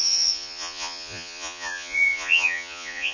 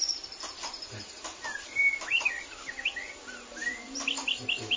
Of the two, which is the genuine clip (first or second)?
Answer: second